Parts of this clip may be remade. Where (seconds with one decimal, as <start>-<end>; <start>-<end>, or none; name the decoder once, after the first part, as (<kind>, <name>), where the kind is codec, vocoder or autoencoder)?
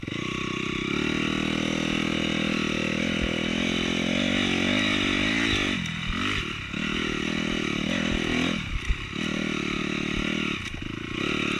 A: none